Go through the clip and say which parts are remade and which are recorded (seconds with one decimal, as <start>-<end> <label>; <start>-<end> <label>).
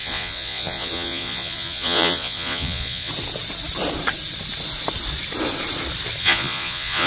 0.0-3.1 remade; 3.1-6.2 recorded; 6.2-7.1 remade